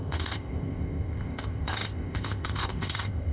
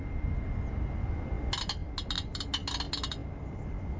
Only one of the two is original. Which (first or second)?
second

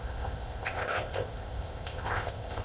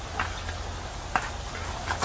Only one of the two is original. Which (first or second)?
second